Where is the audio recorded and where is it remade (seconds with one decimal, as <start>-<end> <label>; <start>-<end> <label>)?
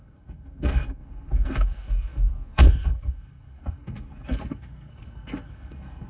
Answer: 0.0-6.1 remade